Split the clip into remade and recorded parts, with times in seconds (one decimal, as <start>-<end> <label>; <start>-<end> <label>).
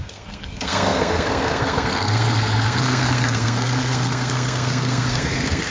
0.0-5.7 remade